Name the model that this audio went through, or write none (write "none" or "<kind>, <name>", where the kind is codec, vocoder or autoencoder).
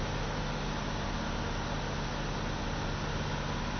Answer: none